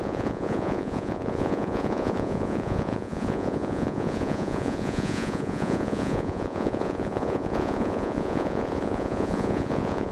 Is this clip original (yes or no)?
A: no